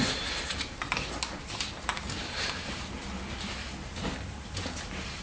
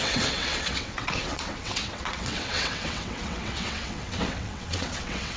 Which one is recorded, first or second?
first